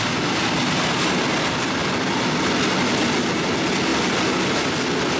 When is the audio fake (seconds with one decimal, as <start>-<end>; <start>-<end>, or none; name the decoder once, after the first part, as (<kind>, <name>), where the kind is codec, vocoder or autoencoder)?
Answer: none